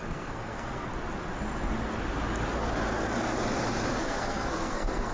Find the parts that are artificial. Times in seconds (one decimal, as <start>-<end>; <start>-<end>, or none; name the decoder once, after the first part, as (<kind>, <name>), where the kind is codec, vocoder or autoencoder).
0.0-0.9 (codec, SNAC); 4.0-5.1